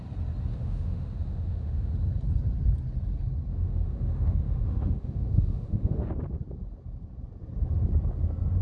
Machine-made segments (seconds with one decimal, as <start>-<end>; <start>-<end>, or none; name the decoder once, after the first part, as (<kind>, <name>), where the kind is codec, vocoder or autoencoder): 0.5-1.9 (autoencoder, DAC-VAE); 3.5-6.1